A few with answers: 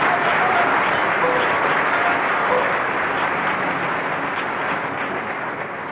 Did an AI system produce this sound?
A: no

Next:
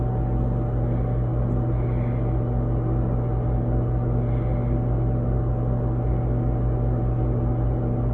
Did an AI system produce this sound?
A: no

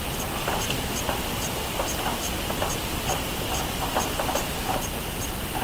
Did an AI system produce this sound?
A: no